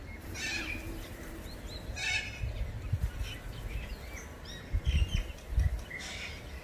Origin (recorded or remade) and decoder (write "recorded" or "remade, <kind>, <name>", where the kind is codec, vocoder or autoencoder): recorded